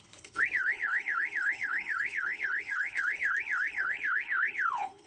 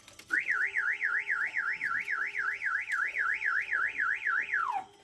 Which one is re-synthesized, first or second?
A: first